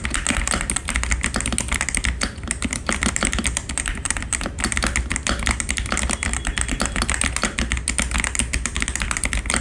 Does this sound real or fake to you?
real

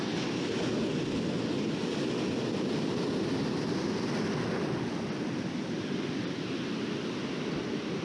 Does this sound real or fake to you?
real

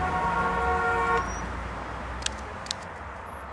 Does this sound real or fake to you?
real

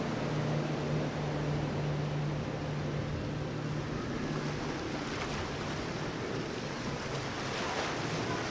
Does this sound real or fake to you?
real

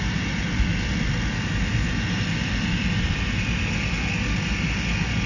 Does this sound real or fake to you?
real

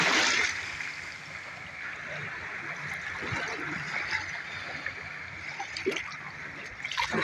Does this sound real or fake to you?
real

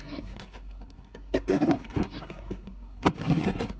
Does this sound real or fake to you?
fake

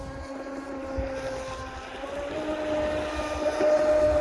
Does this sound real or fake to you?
real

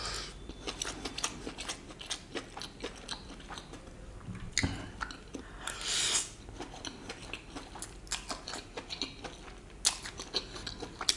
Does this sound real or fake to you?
real